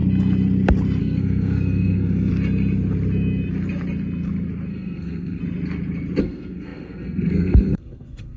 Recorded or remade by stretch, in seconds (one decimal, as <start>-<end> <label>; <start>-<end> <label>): 0.0-1.0 recorded; 1.0-2.3 remade; 2.3-4.7 recorded; 4.7-5.4 remade; 5.4-6.2 recorded; 6.2-8.4 remade